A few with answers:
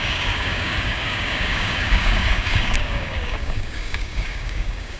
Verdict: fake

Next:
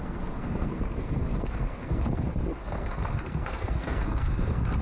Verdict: fake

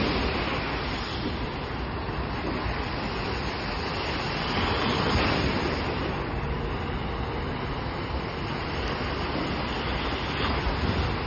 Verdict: real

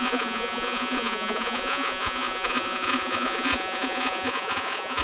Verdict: fake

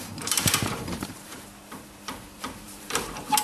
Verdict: fake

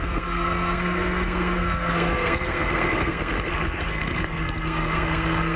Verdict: fake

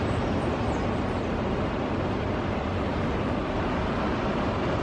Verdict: real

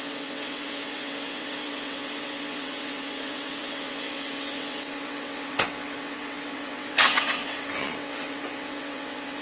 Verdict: fake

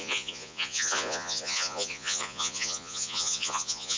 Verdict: fake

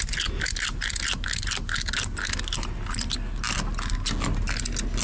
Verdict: real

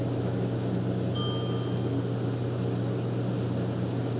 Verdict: real